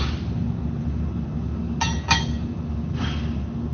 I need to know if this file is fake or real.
real